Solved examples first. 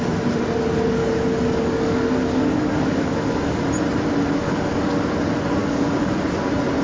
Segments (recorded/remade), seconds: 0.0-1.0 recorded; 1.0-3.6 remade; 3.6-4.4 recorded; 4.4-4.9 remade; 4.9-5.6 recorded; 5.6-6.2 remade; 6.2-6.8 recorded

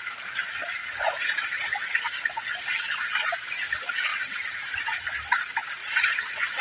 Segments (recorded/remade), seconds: 0.0-0.8 recorded; 0.8-2.2 remade; 2.2-4.1 recorded; 4.1-4.8 remade; 4.8-5.8 recorded; 5.8-6.6 remade

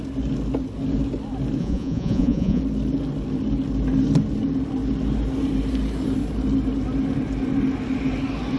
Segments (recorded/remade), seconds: 0.0-1.6 recorded; 1.6-2.6 remade; 2.6-8.6 recorded

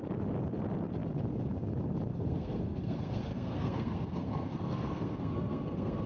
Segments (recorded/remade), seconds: 0.0-2.1 recorded; 2.1-6.1 remade